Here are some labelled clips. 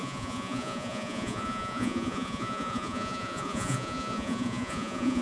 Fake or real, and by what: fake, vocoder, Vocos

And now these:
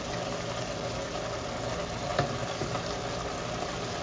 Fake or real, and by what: real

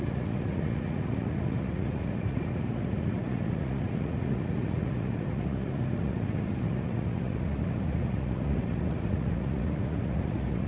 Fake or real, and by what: fake, vocoder, Vocos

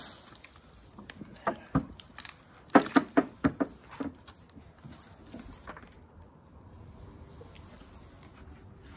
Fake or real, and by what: real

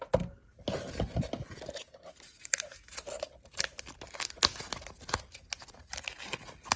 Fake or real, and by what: real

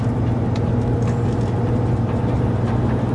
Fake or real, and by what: real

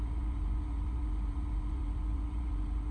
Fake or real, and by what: fake, vocoder, Vocos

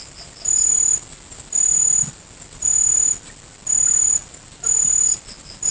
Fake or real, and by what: real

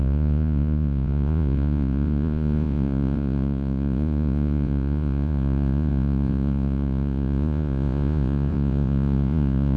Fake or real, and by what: fake, vocoder, Vocos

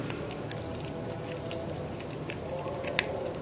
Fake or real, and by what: real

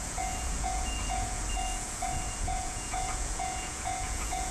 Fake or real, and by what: fake, vocoder, Vocos